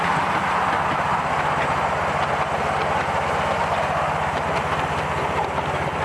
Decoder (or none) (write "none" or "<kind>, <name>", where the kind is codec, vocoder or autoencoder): none